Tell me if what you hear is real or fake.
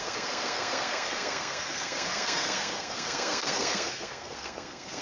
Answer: fake